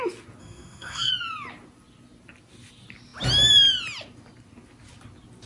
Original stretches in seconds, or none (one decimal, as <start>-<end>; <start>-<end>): 0.0-0.4; 1.1-5.5